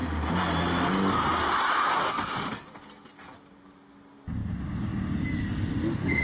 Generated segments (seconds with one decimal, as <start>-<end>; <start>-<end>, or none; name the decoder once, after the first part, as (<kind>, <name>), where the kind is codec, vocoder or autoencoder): none